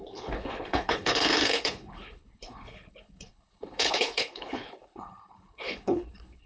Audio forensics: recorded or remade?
remade